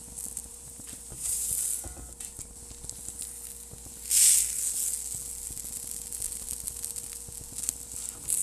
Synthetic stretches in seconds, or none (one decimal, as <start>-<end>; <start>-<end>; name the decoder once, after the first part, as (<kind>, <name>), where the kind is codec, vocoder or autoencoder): 0.5-1.5 (vocoder, BigVGAN v2)